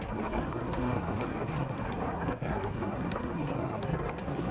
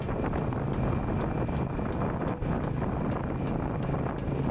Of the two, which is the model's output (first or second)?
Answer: first